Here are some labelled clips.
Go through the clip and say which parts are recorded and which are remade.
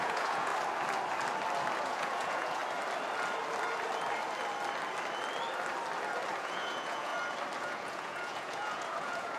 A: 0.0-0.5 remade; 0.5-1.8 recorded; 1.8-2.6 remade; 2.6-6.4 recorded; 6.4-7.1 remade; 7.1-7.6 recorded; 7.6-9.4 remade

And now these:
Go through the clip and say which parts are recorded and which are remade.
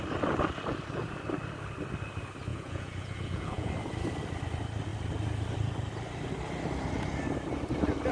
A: 0.0-2.5 recorded; 2.5-3.7 remade; 3.7-8.1 recorded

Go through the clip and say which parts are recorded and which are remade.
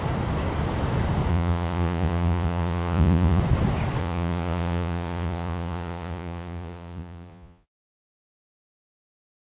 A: 0.0-1.3 recorded; 1.3-3.4 remade; 3.4-4.0 recorded; 4.0-9.5 remade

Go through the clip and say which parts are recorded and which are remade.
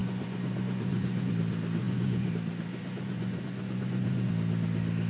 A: 0.0-1.3 remade; 1.3-1.8 recorded; 1.8-2.3 remade; 2.3-2.7 recorded; 2.7-4.3 remade; 4.3-5.1 recorded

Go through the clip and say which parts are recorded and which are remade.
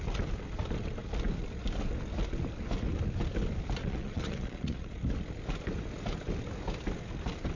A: 0.0-3.8 recorded; 3.8-5.0 remade; 5.0-7.6 recorded